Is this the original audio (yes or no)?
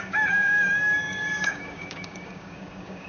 no